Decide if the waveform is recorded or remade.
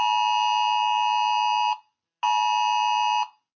recorded